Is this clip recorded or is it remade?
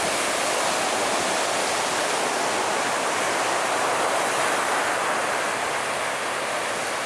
recorded